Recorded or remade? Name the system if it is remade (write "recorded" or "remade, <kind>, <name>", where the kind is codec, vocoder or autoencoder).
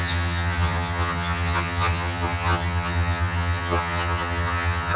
remade, vocoder, HiFi-GAN